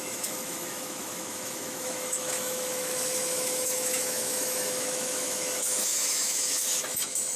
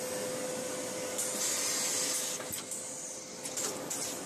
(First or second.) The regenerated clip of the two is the first